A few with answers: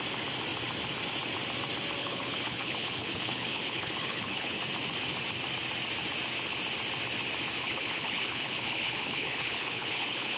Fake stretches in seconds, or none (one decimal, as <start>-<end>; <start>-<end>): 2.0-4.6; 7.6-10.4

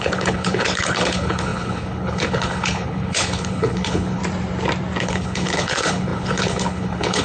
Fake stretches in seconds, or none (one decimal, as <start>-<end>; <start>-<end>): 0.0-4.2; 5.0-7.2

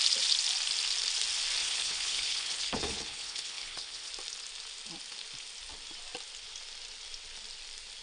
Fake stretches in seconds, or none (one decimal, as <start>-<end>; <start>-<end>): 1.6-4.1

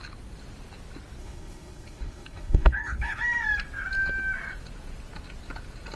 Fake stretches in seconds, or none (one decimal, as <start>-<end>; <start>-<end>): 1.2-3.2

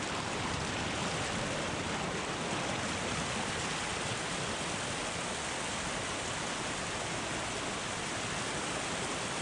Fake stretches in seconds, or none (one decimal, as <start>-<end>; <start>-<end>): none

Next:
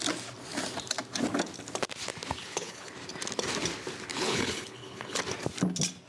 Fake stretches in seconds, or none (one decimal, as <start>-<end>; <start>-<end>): 2.4-2.9; 4.1-5.2